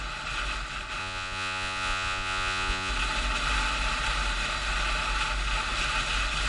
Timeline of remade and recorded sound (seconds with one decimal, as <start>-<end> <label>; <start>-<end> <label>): 0.0-1.0 recorded; 1.0-2.9 remade; 2.9-6.5 recorded